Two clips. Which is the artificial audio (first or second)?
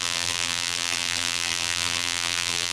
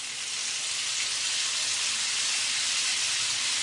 first